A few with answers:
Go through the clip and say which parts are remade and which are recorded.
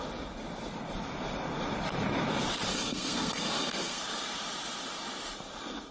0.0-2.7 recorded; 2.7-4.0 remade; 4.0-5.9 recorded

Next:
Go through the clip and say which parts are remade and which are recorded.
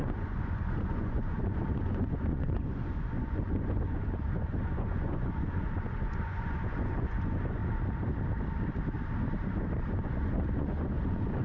0.0-7.6 remade; 7.6-9.9 recorded; 9.9-11.4 remade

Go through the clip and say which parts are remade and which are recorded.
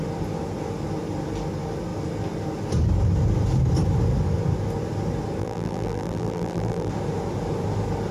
0.0-5.4 recorded; 5.4-6.9 remade; 6.9-8.1 recorded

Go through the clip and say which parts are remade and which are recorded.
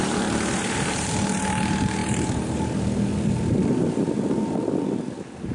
0.0-3.1 remade; 3.1-5.5 recorded